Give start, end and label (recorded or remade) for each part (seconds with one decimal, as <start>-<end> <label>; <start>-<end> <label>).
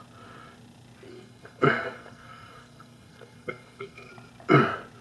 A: 0.0-1.1 recorded; 1.1-4.1 remade; 4.1-5.0 recorded